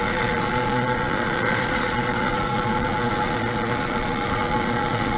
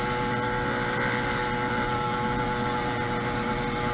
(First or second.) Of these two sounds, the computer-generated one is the first